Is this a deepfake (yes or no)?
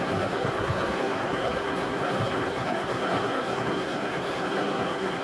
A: yes